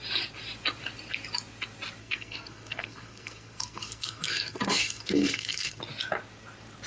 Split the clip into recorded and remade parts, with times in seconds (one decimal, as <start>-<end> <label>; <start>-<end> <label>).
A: 0.0-2.0 recorded; 2.0-5.8 remade; 5.8-6.9 recorded